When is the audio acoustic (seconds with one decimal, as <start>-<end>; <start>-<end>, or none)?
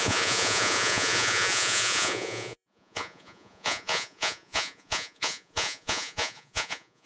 none